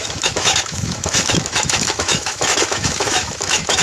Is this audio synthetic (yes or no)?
yes